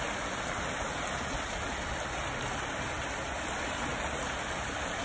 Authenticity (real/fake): real